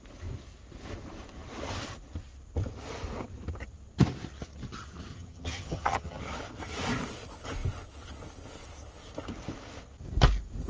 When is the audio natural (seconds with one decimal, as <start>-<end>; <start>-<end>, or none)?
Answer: 0.0-5.1; 6.2-10.7